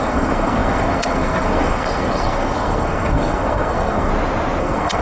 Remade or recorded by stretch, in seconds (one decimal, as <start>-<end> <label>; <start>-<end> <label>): 0.0-4.1 remade; 4.1-4.6 recorded; 4.6-5.0 remade